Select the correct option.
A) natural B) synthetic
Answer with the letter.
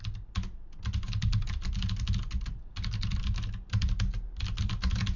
A